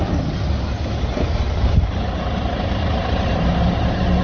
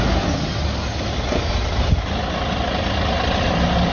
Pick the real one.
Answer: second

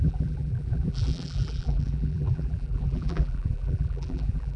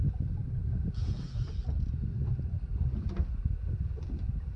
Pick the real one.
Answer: second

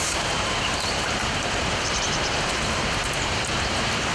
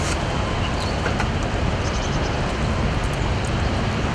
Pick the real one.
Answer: second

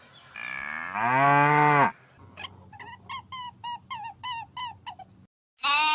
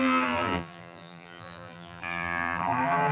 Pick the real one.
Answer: first